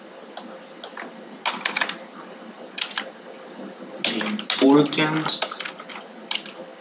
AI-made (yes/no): no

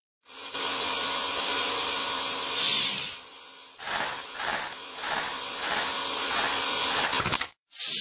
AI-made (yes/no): yes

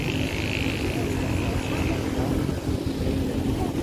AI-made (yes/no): yes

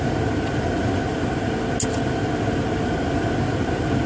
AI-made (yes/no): no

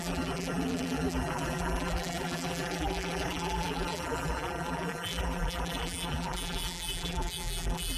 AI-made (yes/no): yes